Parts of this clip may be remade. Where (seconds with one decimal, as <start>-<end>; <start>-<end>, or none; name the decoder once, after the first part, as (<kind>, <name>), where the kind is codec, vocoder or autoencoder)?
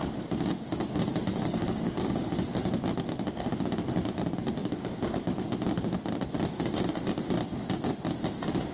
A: 1.3-2.3 (codec, DAC)